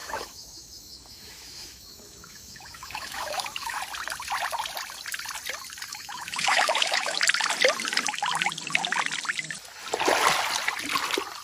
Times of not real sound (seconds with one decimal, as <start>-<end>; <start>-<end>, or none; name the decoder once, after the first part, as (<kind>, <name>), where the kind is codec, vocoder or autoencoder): 0.0-3.8 (autoencoder, DAC-VAE); 5.9-7.2